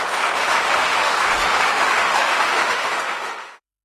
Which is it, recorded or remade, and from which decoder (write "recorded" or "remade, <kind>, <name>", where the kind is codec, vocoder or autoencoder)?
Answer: remade, autoencoder, DAC-VAE